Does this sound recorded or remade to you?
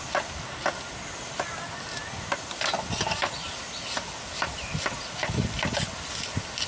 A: recorded